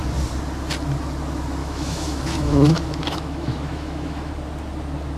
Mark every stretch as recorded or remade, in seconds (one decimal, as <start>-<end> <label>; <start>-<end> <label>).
0.0-1.6 recorded; 1.6-4.3 remade; 4.3-5.2 recorded